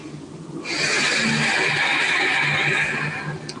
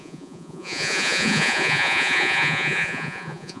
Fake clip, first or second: second